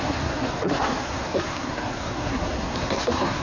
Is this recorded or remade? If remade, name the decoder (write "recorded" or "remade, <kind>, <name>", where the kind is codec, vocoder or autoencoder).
remade, codec, SNAC